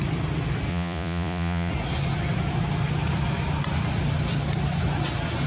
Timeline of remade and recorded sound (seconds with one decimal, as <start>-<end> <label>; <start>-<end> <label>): 0.0-0.7 recorded; 0.7-1.7 remade; 1.7-5.5 recorded